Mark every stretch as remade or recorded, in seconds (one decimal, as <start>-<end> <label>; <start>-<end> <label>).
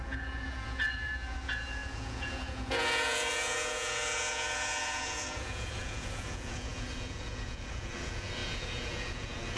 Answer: 0.0-9.6 remade